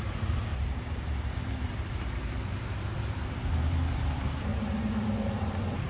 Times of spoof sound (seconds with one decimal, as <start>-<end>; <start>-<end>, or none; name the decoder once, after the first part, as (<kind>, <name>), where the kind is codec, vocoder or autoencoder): 0.0-4.5 (vocoder, BigVGAN v2); 5.3-5.9